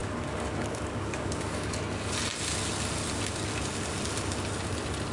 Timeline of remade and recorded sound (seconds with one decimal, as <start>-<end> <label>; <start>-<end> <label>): 0.0-1.8 remade; 1.8-5.1 recorded

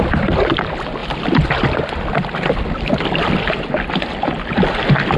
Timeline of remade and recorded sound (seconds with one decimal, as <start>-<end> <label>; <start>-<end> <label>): 0.0-5.2 recorded